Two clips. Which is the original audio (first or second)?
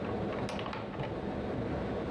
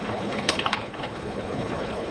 first